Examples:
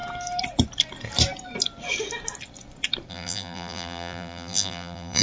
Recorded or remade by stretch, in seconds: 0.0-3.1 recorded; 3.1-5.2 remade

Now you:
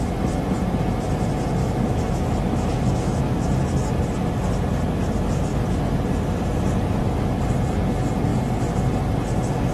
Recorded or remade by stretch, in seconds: 0.0-1.6 recorded; 1.6-3.2 remade; 3.2-9.7 recorded

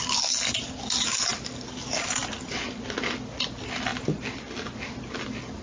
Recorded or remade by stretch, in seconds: 0.0-5.6 recorded

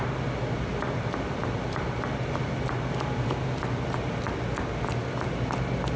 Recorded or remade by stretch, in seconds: 0.0-6.0 recorded

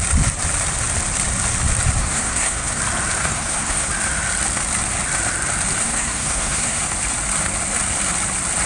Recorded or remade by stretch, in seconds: 0.0-2.0 recorded; 2.0-2.8 remade; 2.8-3.2 recorded; 3.2-3.9 remade; 3.9-5.8 recorded; 5.8-6.8 remade; 6.8-8.7 recorded

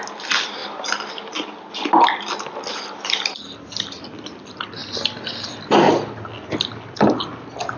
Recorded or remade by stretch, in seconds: 0.0-7.8 recorded

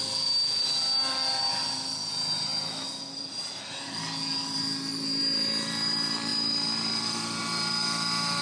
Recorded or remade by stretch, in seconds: 0.0-8.4 recorded